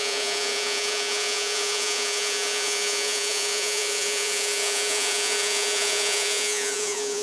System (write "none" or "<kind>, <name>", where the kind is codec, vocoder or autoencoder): vocoder, Vocos